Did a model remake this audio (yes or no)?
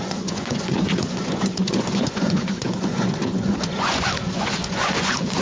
yes